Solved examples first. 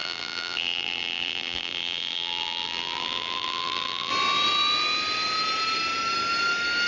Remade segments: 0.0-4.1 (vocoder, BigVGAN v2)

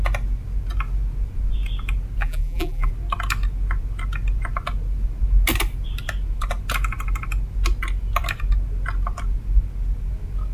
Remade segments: 2.2-2.9 (vocoder, BigVGAN v2)

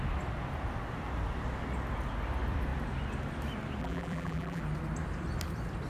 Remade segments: 3.8-4.6 (vocoder, BigVGAN v2)

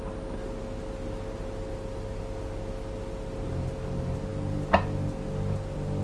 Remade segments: none

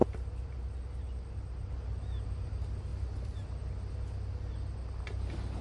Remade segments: 2.9-4.0 (vocoder, BigVGAN v2)

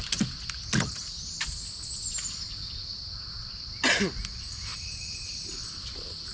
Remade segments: none

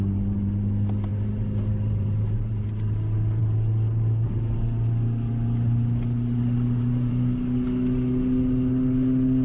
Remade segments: 1.1-2.6 (vocoder, BigVGAN v2)

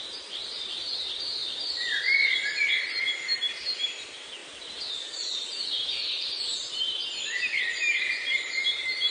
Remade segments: 0.0-1.4 (vocoder, BigVGAN v2); 3.2-4.4; 4.9-6.5; 7.9-9.1